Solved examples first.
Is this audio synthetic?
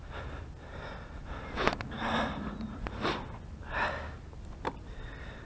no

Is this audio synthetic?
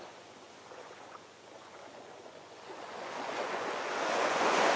yes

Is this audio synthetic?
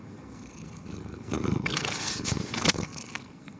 yes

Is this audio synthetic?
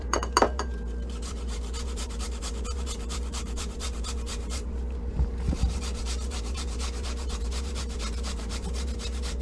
yes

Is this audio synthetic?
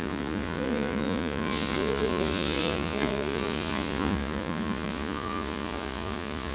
yes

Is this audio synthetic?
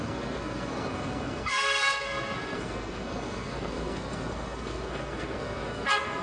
yes